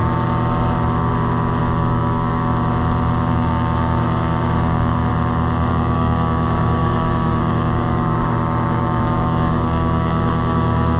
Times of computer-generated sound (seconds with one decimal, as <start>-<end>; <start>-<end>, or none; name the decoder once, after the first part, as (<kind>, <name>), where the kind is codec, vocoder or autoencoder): 1.6-2.5 (codec, DAC); 3.3-5.1; 5.7-11.0

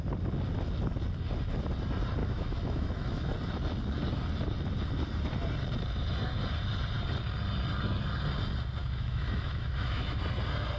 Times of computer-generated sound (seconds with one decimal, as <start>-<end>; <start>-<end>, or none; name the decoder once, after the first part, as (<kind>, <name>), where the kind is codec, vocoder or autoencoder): 2.2-3.3 (autoencoder, DAC-VAE); 8.8-10.2

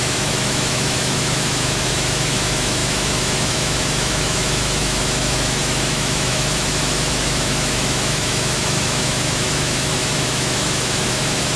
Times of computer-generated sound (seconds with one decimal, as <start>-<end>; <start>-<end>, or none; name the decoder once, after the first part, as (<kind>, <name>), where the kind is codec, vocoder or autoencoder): 0.0-11.6 (autoencoder, DAC-VAE)

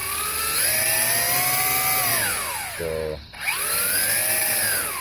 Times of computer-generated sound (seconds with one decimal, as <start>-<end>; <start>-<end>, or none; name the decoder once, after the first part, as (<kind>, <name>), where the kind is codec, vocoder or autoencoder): 2.1-2.8 (autoencoder, DAC-VAE)

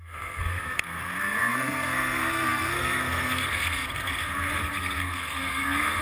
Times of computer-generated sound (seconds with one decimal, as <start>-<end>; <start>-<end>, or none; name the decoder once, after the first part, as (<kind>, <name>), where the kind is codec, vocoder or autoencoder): 0.0-6.0 (codec, SNAC)

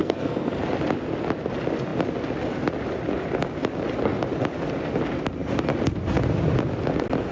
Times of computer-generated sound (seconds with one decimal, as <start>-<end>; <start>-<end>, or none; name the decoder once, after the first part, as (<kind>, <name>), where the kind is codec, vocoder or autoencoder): 0.0-0.6 (codec, SNAC)